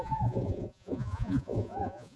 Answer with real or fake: fake